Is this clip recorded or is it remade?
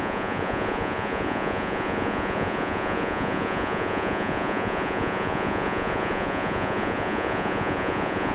remade